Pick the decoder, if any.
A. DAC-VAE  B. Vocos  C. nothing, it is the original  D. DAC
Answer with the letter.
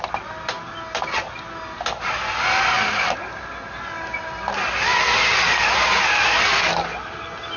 C